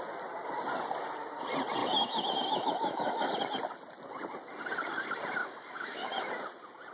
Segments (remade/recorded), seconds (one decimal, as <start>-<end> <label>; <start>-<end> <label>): 0.0-1.8 recorded; 1.8-3.3 remade; 3.3-5.4 recorded; 5.4-6.3 remade; 6.3-6.9 recorded